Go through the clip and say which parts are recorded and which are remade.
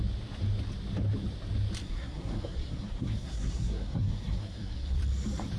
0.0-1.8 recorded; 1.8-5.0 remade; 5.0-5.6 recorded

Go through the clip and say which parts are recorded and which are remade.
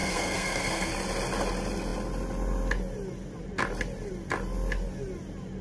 0.0-0.9 remade; 0.9-5.6 recorded